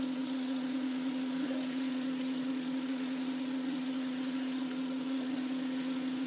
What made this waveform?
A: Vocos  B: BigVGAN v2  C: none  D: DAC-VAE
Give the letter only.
A